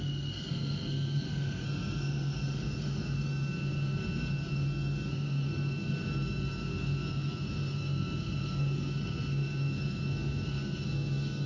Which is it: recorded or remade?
remade